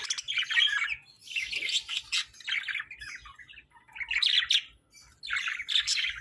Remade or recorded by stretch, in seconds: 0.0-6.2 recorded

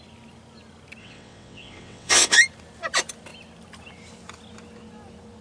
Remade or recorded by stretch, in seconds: 0.0-1.0 recorded; 1.0-2.4 remade; 2.4-5.4 recorded